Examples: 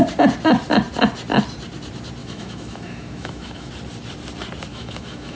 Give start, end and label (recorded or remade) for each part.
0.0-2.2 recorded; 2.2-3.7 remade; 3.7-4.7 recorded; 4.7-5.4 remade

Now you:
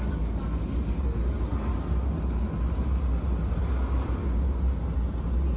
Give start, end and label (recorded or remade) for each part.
0.0-5.6 recorded